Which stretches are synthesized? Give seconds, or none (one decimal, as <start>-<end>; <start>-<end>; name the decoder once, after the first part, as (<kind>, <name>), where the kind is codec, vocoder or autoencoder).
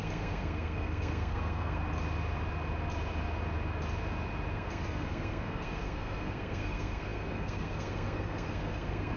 0.0-1.8 (codec, SNAC); 4.5-9.2